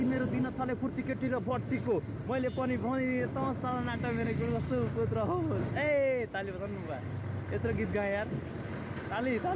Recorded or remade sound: recorded